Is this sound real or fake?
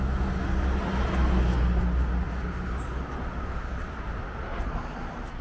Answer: real